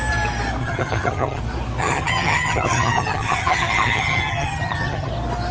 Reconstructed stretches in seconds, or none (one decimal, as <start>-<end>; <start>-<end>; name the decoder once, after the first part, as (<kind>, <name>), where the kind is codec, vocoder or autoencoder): 0.6-1.4 (vocoder, HiFi-GAN); 1.8-5.1